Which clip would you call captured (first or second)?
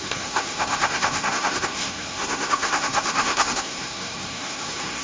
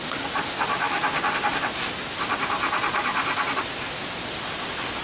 second